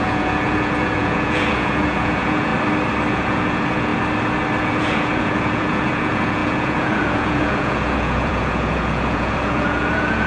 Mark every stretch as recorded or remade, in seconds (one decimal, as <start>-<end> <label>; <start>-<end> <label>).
0.0-2.5 remade; 2.5-3.1 recorded; 3.1-3.9 remade; 3.9-4.6 recorded; 4.6-10.3 remade